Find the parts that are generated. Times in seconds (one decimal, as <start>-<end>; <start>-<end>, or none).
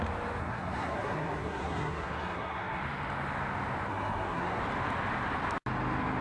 0.4-2.8; 3.9-4.6